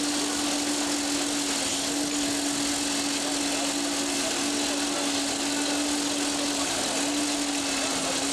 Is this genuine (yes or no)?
yes